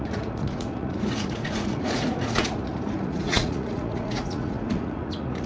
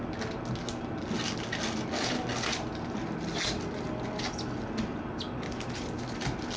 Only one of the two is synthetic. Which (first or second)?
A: first